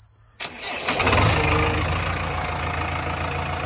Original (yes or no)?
yes